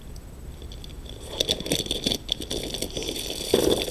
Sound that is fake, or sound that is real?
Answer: real